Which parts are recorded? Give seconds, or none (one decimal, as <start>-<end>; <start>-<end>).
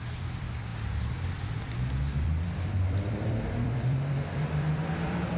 0.7-2.0